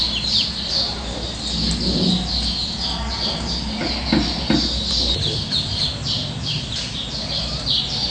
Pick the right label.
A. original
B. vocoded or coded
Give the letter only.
A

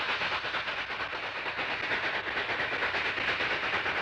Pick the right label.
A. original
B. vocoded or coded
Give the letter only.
A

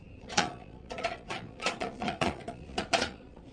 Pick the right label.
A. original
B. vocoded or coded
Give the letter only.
B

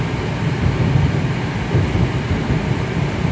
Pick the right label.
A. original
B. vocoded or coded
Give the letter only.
A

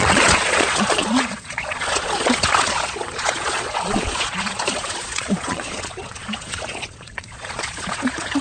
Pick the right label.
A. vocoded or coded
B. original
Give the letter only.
A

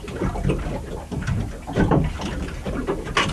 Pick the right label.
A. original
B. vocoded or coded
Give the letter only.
A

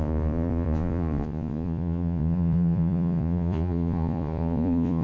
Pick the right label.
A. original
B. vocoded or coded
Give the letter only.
B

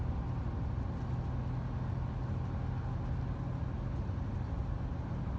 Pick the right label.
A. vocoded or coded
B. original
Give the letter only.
B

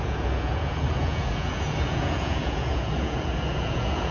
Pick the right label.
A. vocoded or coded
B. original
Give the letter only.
A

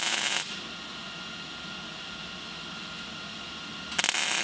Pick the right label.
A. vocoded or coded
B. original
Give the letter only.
B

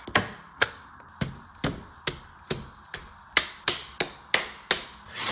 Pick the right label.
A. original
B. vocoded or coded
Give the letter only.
A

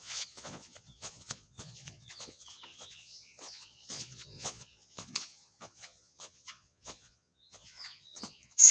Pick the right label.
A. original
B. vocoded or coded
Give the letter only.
B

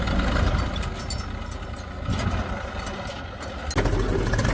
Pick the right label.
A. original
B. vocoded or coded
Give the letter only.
A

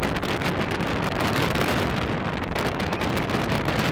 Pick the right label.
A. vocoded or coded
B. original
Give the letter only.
B